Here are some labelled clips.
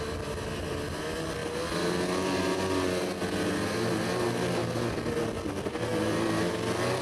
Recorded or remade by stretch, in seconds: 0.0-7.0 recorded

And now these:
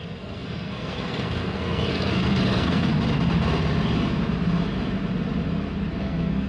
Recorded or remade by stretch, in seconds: 0.0-2.9 remade; 2.9-6.0 recorded; 6.0-6.5 remade

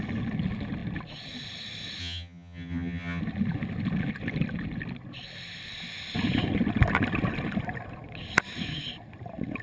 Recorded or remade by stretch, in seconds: 0.0-2.0 recorded; 2.0-3.2 remade; 3.2-9.6 recorded

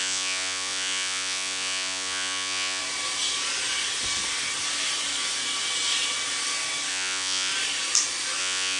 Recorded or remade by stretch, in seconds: 0.0-2.8 remade; 2.8-6.9 recorded; 6.9-7.5 remade; 7.5-8.4 recorded; 8.4-8.8 remade

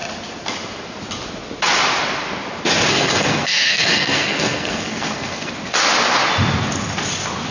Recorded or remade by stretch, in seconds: 0.0-2.9 recorded; 2.9-5.5 remade; 5.5-7.5 recorded

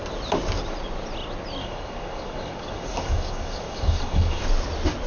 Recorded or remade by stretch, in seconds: 0.0-1.6 recorded; 1.6-4.4 remade; 4.4-5.1 recorded

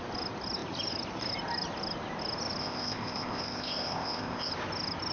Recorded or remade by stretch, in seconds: 0.0-2.6 recorded; 2.6-4.5 remade; 4.5-5.1 recorded